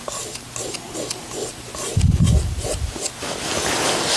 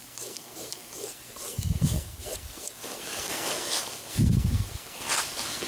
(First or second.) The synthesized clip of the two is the second